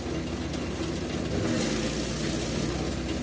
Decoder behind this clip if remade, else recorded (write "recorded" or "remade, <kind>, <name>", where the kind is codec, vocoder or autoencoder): recorded